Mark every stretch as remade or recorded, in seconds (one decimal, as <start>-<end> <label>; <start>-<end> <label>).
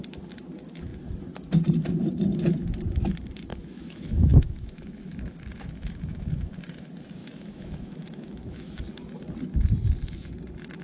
0.0-3.5 recorded; 3.5-6.3 remade; 6.3-7.2 recorded; 7.2-8.8 remade; 8.8-10.8 recorded